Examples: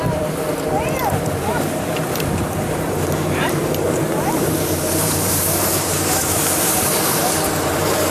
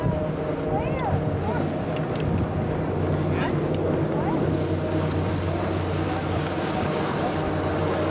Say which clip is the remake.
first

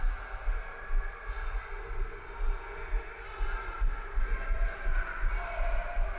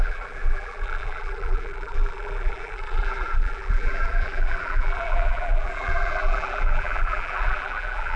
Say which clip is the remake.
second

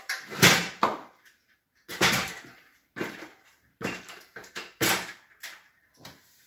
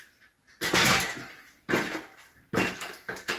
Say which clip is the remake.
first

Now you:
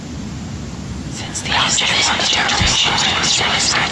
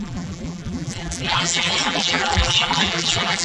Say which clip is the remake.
second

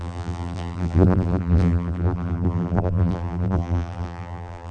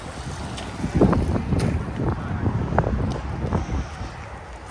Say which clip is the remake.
first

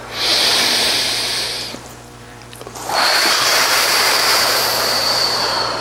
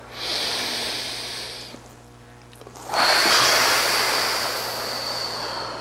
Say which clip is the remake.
first